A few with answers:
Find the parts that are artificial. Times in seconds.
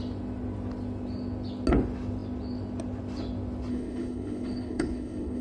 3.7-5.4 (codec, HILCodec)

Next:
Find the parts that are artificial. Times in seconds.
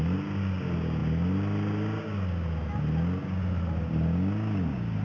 none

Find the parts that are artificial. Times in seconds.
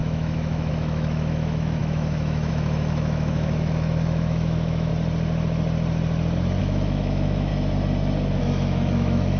0.0-4.9 (autoencoder, DAC-VAE); 6.6-7.5; 8.4-9.4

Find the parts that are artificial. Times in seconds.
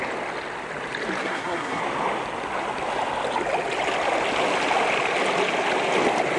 1.2-1.8 (codec, SNAC)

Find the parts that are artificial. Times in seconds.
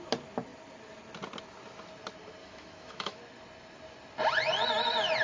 2.4-3.2 (autoencoder, DAC-VAE)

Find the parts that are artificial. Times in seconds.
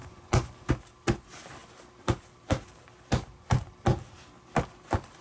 0.0-0.7 (vocoder, Vocos)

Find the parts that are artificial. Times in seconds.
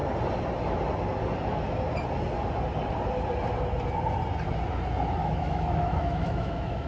5.2-6.9 (autoencoder, DAC-VAE)